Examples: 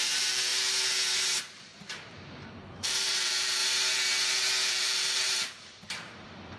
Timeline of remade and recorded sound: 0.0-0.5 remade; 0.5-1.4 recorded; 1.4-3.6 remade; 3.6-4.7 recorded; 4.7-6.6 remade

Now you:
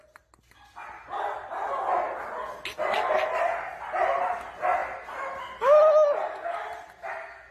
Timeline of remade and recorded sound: 0.0-7.5 recorded